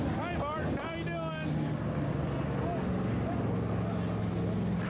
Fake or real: real